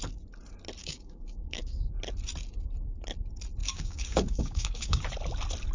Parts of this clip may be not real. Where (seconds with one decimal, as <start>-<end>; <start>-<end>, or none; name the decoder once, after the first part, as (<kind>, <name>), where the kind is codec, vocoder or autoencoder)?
0.8-1.9 (codec, DAC); 3.6-5.0